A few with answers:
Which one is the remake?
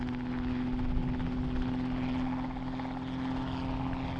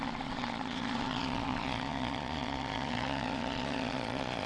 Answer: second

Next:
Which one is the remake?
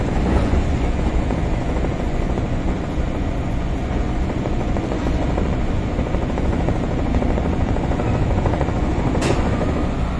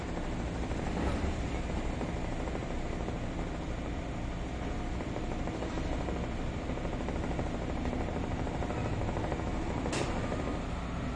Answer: first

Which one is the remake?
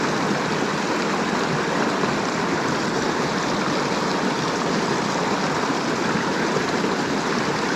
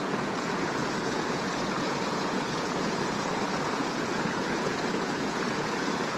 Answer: second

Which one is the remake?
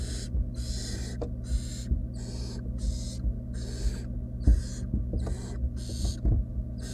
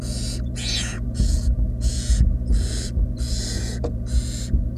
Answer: second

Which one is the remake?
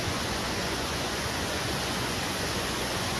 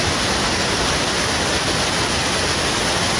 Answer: first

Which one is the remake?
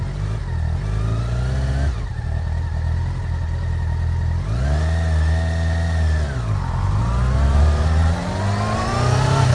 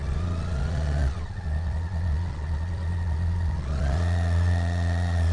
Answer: second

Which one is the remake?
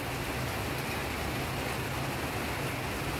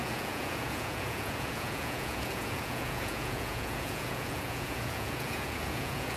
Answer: second